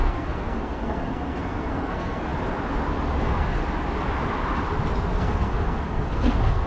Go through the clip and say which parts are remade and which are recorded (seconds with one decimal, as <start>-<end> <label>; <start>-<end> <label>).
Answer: 0.0-2.3 remade; 2.3-3.2 recorded; 3.2-3.6 remade; 3.6-5.1 recorded; 5.1-6.7 remade